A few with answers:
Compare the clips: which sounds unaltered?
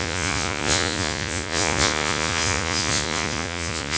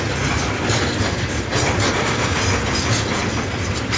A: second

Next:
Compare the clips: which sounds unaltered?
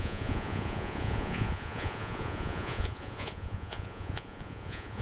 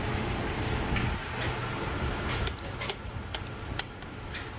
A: second